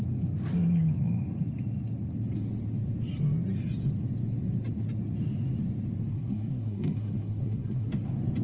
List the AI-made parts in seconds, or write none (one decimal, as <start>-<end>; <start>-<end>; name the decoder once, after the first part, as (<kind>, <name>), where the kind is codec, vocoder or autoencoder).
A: 6.1-7.9 (codec, SNAC)